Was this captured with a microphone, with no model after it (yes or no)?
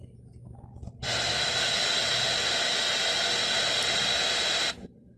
yes